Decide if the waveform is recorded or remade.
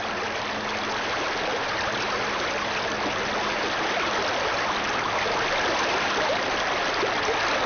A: recorded